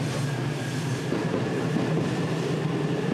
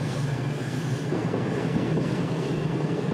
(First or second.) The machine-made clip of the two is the second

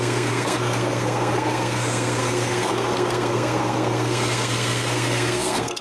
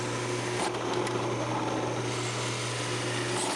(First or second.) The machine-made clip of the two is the first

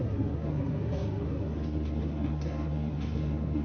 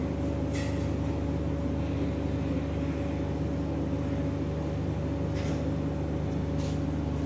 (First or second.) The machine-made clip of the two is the first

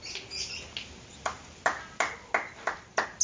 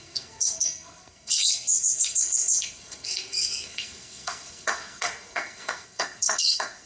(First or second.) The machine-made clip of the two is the second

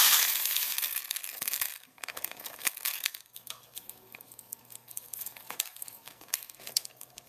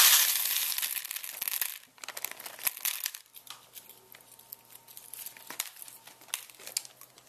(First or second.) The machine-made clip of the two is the first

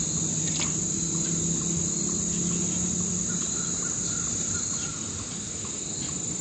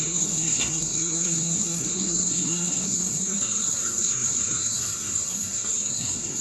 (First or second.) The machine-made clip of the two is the second